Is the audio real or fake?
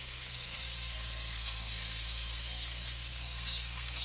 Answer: fake